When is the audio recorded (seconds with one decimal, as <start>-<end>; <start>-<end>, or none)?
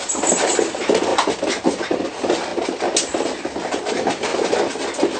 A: 1.1-1.8; 2.5-3.9; 4.3-5.2